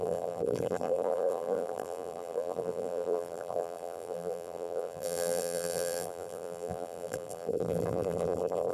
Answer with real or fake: fake